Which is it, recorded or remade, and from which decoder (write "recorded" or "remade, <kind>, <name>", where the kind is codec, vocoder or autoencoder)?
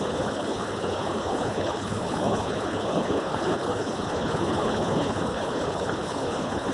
remade, codec, HILCodec